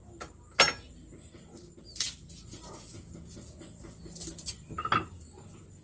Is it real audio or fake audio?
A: real